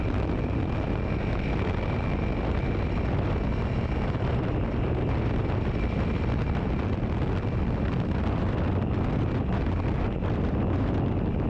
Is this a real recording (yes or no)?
yes